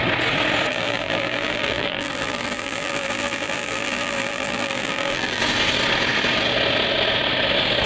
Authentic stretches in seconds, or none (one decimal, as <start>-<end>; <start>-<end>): 0.0-0.7; 5.4-7.9